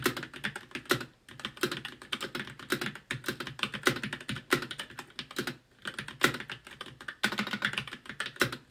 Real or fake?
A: real